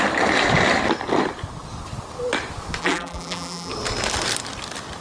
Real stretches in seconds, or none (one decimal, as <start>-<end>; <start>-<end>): 0.0-2.8; 3.7-5.0